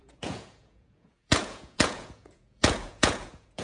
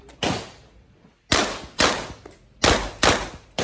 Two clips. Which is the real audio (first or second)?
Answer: second